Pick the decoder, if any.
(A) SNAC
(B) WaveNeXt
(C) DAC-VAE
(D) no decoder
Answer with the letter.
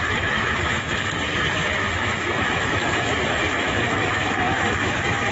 C